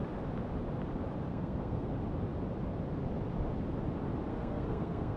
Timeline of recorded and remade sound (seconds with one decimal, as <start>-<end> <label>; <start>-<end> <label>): 0.0-1.3 recorded; 1.3-1.9 remade; 1.9-4.3 recorded; 4.3-5.2 remade

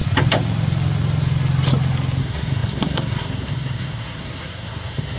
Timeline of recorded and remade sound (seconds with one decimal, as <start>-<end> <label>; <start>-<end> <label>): 0.0-2.2 recorded; 2.2-5.2 remade